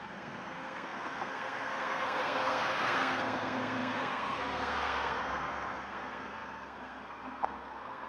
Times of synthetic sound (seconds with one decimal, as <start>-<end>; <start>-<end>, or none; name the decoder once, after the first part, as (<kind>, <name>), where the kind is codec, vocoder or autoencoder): 0.0-8.1 (codec, SNAC)